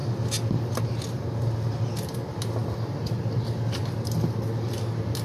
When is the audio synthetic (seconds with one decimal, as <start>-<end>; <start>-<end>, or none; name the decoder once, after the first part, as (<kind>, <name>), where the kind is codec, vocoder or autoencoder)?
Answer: 0.0-0.8 (vocoder, BigVGAN v2); 2.6-4.8